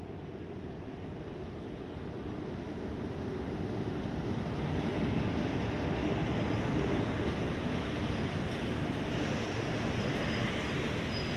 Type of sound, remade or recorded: recorded